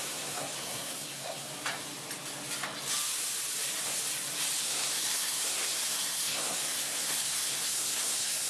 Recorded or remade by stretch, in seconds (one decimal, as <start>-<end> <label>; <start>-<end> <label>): 0.0-1.5 remade; 1.5-4.6 recorded; 4.6-8.5 remade